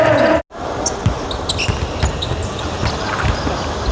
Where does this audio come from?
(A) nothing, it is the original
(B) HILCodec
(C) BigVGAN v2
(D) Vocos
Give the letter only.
A